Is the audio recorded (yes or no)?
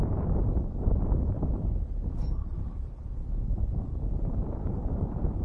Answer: no